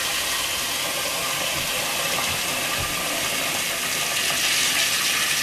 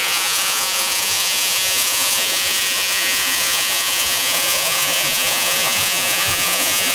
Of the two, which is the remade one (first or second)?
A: second